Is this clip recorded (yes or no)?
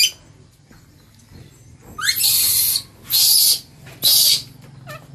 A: yes